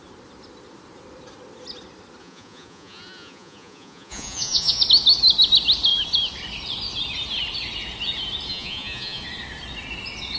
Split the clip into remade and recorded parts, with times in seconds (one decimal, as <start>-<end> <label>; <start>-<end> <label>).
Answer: 0.0-2.2 recorded; 2.2-4.8 remade; 4.8-8.5 recorded; 8.5-9.2 remade; 9.2-10.4 recorded